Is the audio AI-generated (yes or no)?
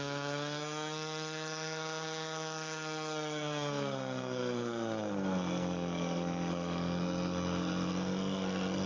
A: yes